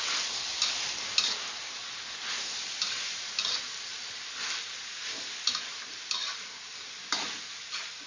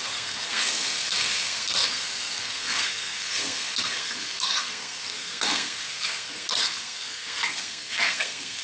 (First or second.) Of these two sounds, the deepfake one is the second